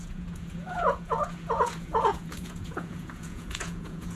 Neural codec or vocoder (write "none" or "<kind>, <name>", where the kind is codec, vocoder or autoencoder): vocoder, Vocos